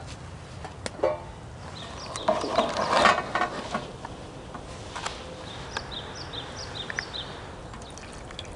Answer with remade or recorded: recorded